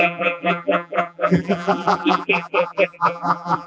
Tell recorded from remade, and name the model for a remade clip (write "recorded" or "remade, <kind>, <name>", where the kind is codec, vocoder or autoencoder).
remade, vocoder, BigVGAN v2